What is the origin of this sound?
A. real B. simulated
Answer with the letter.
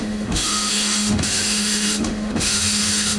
B